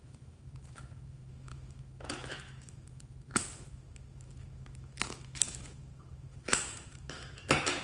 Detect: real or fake fake